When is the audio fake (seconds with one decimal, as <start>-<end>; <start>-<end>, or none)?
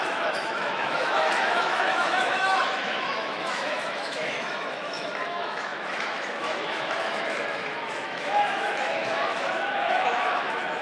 0.0-10.8